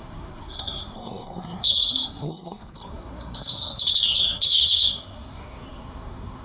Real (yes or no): no